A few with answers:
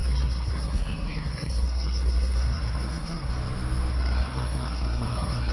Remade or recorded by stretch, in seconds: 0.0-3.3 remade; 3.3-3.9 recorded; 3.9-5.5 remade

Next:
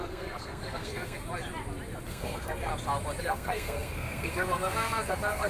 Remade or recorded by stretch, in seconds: 0.0-1.2 remade; 1.2-2.1 recorded; 2.1-2.7 remade; 2.7-3.2 recorded; 3.2-5.5 remade

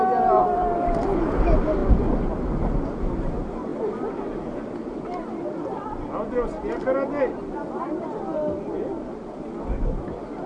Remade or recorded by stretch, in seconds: 0.0-10.5 recorded

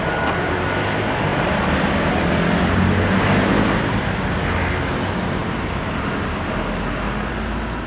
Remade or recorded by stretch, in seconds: 0.0-7.9 recorded

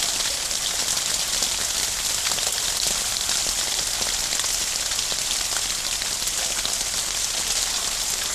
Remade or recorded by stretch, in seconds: 0.0-8.3 recorded

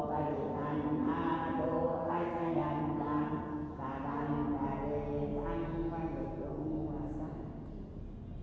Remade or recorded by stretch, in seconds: 0.0-2.0 recorded; 2.0-2.8 remade; 2.8-8.4 recorded

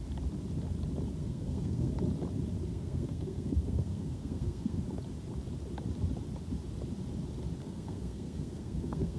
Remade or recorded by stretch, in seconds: 0.0-1.2 recorded; 1.2-1.9 remade; 1.9-2.7 recorded; 2.7-4.8 remade; 4.8-7.6 recorded; 7.6-9.2 remade